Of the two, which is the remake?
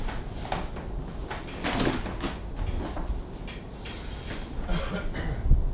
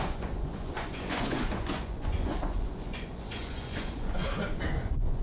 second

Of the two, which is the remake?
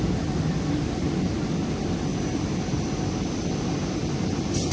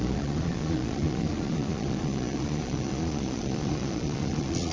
second